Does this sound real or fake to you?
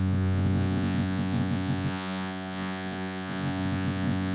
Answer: fake